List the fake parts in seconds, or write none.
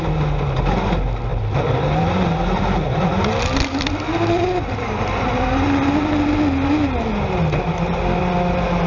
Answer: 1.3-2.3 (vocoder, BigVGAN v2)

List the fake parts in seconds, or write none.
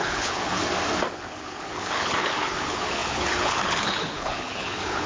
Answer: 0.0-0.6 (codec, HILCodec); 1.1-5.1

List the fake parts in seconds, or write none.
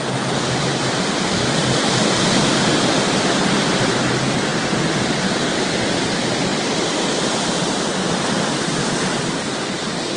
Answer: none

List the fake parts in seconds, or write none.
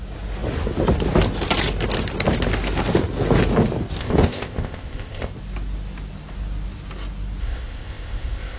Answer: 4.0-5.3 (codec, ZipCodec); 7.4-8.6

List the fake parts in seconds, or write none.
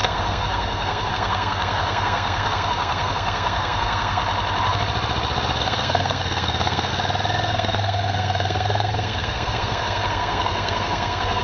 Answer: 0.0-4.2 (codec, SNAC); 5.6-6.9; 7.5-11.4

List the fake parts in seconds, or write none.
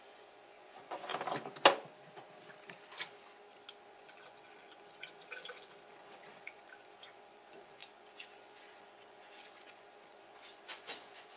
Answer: 0.0-1.1 (vocoder, Vocos); 3.9-11.4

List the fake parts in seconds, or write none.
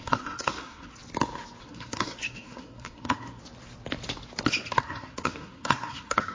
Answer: 0.0-0.9 (codec, SNAC); 1.6-3.4; 4.8-6.3